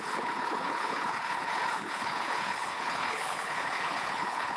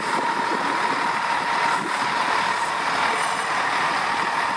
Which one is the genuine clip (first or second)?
second